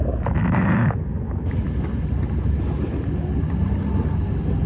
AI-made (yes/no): no